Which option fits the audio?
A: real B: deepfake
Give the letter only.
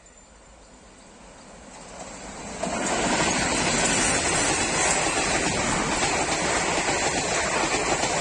A